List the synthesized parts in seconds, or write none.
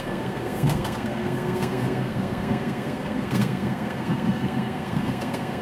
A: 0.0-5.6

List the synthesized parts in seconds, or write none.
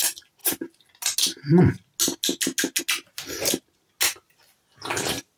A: none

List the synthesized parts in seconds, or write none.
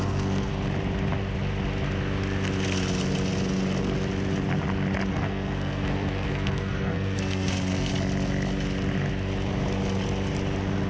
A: 0.0-0.5; 5.1-7.9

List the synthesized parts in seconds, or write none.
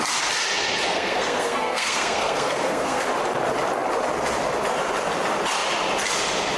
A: 0.9-3.0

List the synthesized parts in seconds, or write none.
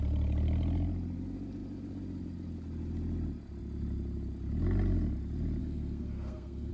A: 5.6-6.7